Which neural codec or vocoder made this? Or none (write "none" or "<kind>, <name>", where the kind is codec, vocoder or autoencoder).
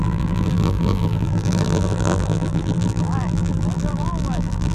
vocoder, BigVGAN v2